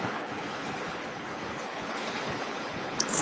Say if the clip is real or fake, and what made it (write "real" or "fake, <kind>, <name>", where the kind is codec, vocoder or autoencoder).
fake, codec, HILCodec